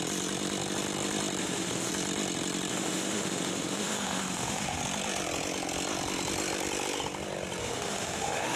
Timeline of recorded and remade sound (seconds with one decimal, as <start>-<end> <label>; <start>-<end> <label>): 0.0-1.4 recorded; 1.4-1.9 remade; 1.9-2.7 recorded; 2.7-4.8 remade; 4.8-7.6 recorded; 7.6-8.6 remade